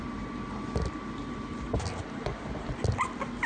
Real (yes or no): yes